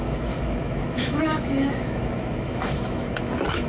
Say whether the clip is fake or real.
fake